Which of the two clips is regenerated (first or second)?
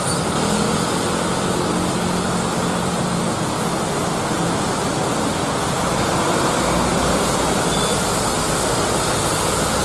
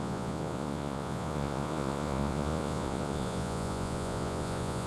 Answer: second